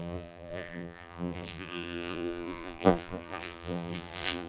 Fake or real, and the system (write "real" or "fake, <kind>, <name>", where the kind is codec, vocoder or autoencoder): fake, vocoder, BigVGAN v2